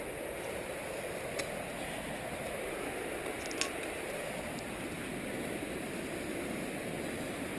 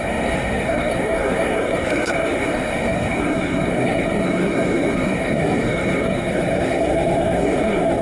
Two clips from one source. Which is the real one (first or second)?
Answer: first